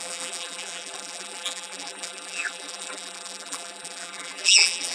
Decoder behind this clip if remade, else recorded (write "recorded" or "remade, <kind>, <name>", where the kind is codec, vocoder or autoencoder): remade, vocoder, BigVGAN v2